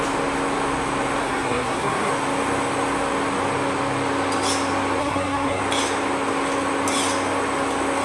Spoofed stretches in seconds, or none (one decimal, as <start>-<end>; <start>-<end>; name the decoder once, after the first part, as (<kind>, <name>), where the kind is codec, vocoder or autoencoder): 1.2-2.1 (codec, SNAC); 5.0-5.6